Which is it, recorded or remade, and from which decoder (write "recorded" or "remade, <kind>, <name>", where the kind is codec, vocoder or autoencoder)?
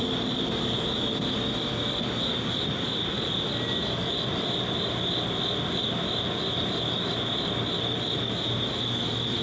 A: recorded